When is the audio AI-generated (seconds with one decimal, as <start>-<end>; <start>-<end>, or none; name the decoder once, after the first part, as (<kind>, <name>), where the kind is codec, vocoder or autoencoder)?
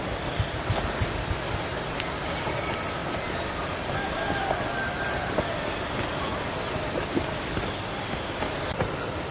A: 0.0-1.0 (vocoder, BigVGAN v2); 1.9-3.0; 4.4-6.3; 8.4-9.3